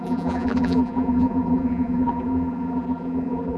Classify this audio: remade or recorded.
remade